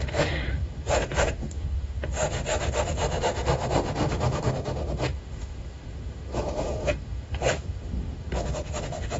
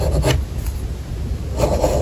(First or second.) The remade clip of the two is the first